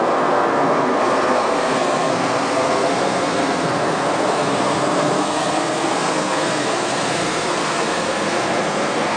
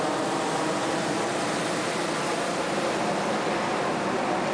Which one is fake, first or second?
first